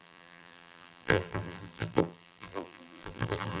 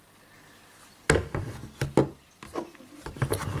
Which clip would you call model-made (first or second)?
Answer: first